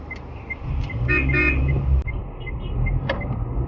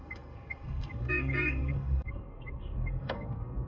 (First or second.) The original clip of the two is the first